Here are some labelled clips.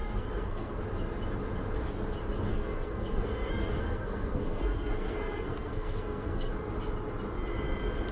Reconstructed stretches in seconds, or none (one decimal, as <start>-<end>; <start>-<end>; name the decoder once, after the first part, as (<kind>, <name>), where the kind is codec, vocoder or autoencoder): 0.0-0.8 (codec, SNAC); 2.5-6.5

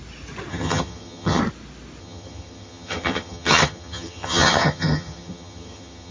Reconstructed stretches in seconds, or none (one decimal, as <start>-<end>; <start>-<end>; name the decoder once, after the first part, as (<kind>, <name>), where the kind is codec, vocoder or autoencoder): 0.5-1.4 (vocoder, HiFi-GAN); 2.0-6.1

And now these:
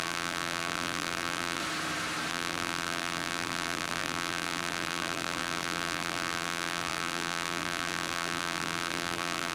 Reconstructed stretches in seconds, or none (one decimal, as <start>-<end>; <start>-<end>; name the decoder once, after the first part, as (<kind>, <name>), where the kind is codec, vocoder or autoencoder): 0.0-1.6 (vocoder, BigVGAN v2); 2.3-9.5

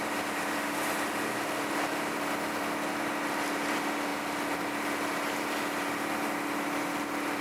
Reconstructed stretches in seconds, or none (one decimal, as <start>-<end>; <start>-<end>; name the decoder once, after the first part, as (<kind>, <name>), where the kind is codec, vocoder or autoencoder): none

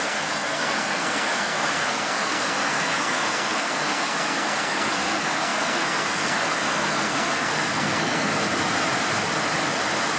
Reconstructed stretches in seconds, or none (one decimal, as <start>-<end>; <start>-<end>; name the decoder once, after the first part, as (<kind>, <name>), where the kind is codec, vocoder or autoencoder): 0.0-8.3 (codec, SNAC)